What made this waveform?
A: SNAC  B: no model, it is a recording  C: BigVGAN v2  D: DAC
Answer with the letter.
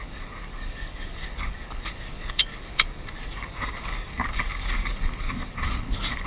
D